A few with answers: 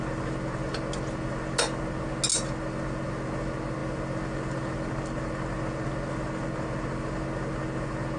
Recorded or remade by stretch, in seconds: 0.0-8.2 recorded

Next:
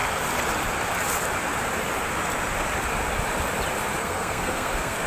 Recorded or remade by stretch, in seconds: 0.0-4.0 recorded; 4.0-5.1 remade

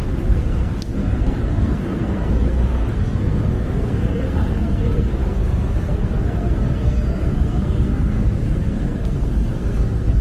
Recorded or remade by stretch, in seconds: 0.0-10.2 remade

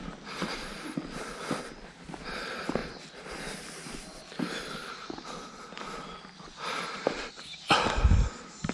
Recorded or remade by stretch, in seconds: 0.0-8.7 recorded